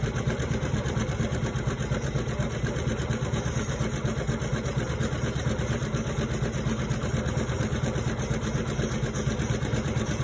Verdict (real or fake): fake